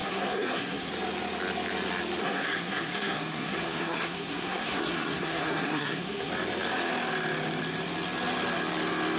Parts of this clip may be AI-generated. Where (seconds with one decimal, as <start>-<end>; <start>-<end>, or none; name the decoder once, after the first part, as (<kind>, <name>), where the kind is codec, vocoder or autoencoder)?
0.0-0.9 (codec, SNAC); 2.2-6.3